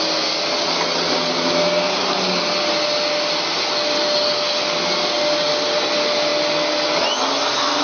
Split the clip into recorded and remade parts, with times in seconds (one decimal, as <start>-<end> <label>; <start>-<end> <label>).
0.0-7.8 recorded